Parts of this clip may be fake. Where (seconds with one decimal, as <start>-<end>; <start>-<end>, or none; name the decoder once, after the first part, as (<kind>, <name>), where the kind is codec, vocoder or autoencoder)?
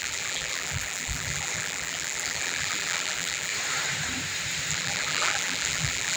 0.0-3.5 (vocoder, BigVGAN v2); 4.7-6.2